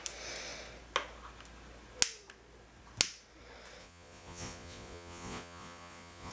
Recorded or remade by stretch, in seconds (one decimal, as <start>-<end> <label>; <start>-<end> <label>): 0.0-3.8 recorded; 3.8-6.3 remade